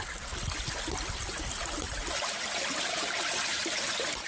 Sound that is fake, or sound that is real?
real